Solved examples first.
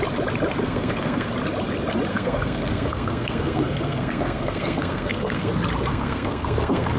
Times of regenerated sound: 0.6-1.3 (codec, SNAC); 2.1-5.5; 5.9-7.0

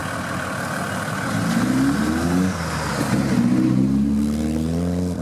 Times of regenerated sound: none

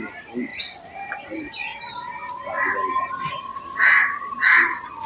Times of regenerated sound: 0.0-5.1 (vocoder, BigVGAN v2)

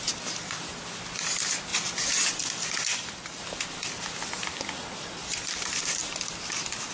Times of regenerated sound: 0.0-6.9 (vocoder, BigVGAN v2)

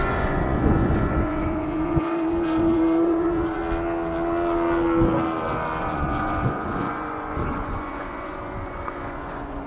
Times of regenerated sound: 0.0-3.6 (vocoder, Vocos); 5.8-9.7